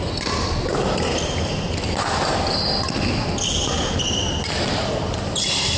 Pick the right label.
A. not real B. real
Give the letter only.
B